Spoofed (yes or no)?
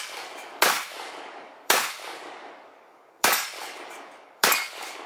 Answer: yes